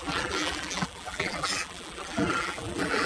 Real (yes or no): no